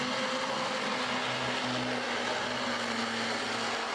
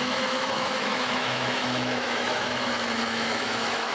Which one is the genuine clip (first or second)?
first